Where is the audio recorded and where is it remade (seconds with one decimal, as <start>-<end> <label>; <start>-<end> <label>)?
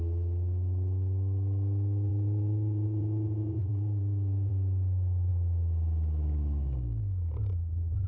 0.0-2.1 recorded; 2.1-4.5 remade; 4.5-8.1 recorded